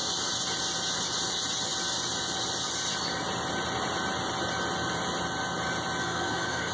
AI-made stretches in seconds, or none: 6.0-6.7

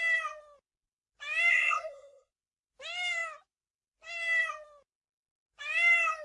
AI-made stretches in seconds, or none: 1.5-2.3

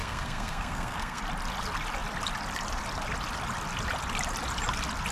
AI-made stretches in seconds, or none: 0.0-1.2